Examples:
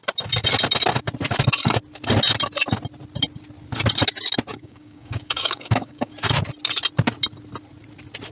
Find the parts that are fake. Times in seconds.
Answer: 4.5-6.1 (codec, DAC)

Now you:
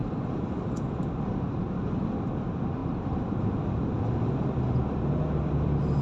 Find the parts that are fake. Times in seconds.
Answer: 0.0-0.9 (vocoder, BigVGAN v2); 2.8-4.8

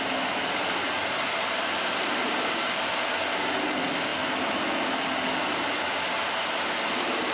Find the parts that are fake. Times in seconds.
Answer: none

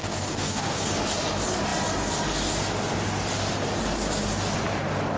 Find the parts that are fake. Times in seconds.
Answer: 0.0-0.8 (codec, DAC)